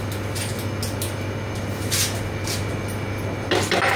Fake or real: real